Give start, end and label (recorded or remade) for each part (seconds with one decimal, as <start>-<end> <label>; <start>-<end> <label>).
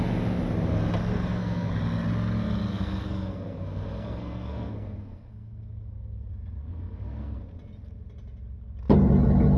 0.0-1.1 recorded; 1.1-1.7 remade; 1.7-2.7 recorded; 2.7-6.3 remade; 6.3-6.7 recorded; 6.7-7.4 remade; 7.4-9.6 recorded